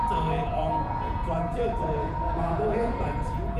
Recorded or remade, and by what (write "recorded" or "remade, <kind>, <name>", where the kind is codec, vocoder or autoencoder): remade, vocoder, Vocos